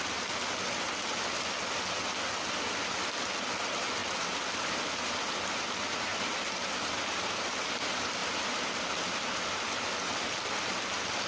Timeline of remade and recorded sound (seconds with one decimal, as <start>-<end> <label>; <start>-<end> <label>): 0.0-11.3 recorded